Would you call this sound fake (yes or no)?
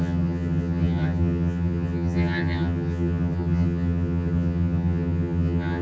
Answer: yes